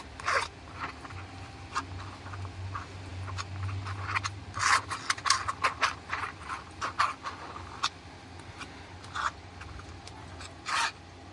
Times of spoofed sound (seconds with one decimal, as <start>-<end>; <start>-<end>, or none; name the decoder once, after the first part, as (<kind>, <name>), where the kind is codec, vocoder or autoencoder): none

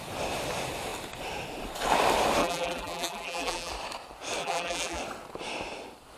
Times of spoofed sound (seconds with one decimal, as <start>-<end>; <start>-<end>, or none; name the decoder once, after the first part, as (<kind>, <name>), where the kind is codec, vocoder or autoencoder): 2.4-3.7 (vocoder, BigVGAN v2); 4.4-5.0

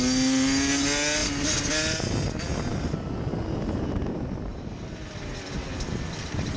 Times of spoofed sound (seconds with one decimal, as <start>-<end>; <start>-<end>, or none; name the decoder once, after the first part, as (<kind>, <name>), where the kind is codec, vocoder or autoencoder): 4.5-5.5 (vocoder, BigVGAN v2)

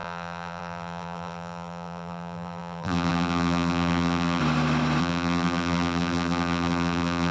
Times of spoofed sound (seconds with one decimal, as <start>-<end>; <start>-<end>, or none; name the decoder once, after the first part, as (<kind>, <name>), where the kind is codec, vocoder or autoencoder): 0.0-4.4 (vocoder, BigVGAN v2); 5.0-7.3

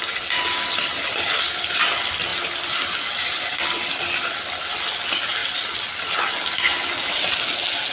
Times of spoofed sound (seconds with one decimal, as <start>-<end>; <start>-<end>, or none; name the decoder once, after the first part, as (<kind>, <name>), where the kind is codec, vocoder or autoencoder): 2.3-4.7 (vocoder, BigVGAN v2); 5.4-6.2

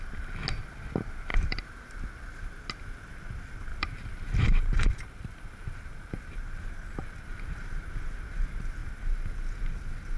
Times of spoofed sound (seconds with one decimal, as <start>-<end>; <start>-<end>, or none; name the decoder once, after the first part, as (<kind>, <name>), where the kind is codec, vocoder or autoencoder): 1.3-2.1 (vocoder, BigVGAN v2); 3.7-6.6

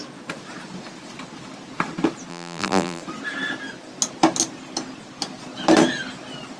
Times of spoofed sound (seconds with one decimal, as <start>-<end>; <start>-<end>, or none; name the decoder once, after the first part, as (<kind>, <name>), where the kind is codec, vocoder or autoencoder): 2.3-3.0 (vocoder, BigVGAN v2)

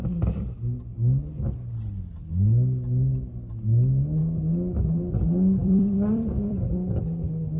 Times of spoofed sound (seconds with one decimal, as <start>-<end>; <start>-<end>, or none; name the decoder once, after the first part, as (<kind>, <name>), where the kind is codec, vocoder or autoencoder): 5.6-6.7 (vocoder, BigVGAN v2)